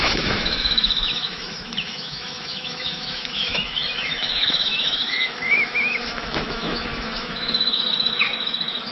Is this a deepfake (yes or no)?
yes